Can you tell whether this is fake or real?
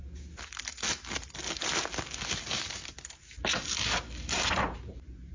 real